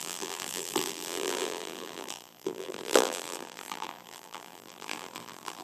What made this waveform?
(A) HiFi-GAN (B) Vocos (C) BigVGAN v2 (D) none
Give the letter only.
C